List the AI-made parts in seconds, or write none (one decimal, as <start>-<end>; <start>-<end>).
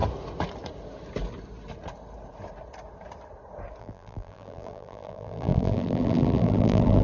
3.8-7.0